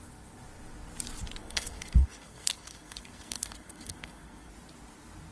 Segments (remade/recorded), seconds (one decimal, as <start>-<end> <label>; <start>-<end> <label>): 0.0-1.4 recorded; 1.4-4.5 remade; 4.5-5.3 recorded